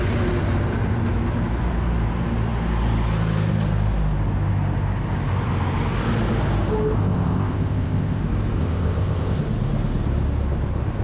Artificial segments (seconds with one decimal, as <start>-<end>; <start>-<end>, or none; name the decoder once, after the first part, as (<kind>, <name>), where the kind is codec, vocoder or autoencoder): 7.0-8.2 (codec, ZipCodec); 8.6-9.4